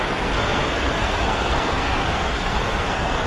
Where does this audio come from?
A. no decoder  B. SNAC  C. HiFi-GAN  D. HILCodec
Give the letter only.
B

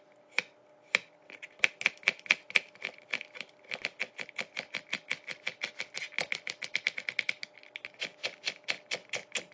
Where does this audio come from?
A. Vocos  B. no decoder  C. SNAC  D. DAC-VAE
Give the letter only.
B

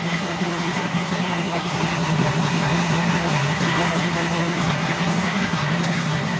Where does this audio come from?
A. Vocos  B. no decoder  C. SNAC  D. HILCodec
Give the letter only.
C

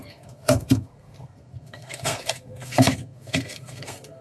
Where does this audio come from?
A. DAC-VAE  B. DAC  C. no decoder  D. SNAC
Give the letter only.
D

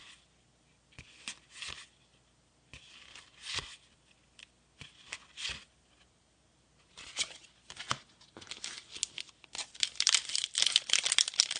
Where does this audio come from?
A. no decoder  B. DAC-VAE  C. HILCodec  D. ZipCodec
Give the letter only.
A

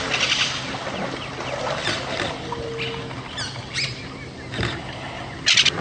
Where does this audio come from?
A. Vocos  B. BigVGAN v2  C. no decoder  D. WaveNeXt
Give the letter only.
C